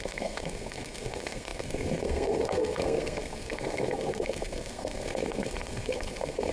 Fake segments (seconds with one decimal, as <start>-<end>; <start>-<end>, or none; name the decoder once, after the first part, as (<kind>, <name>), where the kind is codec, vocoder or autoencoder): 0.0-6.5 (codec, SNAC)